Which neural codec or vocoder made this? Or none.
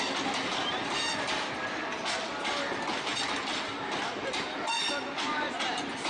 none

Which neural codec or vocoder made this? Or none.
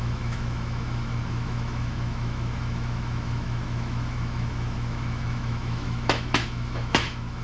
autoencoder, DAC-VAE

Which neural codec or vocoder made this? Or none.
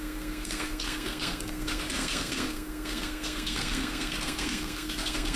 codec, SNAC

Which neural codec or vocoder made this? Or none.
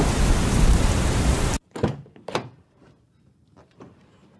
vocoder, BigVGAN v2